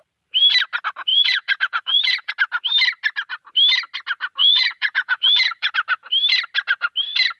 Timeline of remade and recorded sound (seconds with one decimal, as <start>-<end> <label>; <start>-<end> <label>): 0.0-1.1 recorded; 1.1-2.3 remade; 2.3-4.4 recorded; 4.4-5.7 remade; 5.7-7.4 recorded